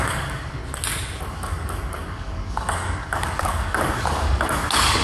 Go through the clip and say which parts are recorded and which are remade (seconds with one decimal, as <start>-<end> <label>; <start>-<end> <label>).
0.0-0.6 remade; 0.6-1.3 recorded; 1.3-5.0 remade